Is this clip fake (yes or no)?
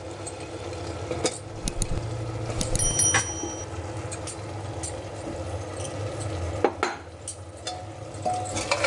no